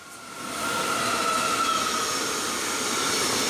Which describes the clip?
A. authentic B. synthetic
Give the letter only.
A